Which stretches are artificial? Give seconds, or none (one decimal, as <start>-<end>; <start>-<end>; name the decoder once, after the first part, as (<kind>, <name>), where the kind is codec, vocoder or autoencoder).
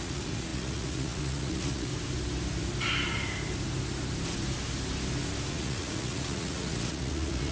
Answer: 0.0-1.9 (vocoder, Vocos); 5.5-7.5